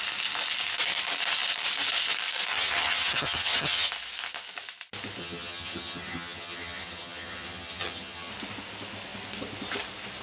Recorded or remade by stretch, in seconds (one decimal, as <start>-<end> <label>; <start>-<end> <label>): 0.0-2.5 recorded; 2.5-3.9 remade; 3.9-5.2 recorded; 5.2-8.3 remade; 8.3-10.2 recorded